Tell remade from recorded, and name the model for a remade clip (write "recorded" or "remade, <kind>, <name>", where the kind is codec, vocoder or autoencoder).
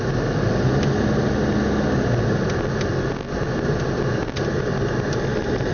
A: recorded